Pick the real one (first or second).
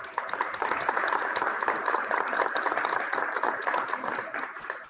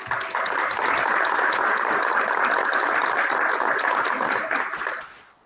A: second